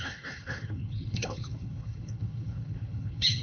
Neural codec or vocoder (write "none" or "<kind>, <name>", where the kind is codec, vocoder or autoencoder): codec, HILCodec